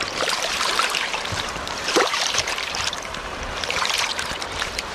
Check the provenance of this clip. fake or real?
fake